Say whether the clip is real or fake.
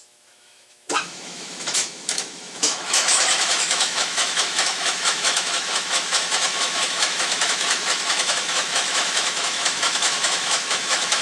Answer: fake